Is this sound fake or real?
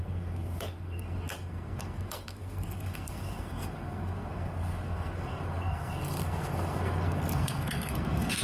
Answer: fake